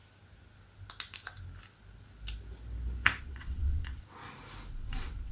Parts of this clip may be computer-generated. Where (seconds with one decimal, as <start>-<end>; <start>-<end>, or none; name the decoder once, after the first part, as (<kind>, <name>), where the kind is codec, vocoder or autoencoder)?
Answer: 3.2-4.2 (vocoder, WaveNeXt); 4.7-5.3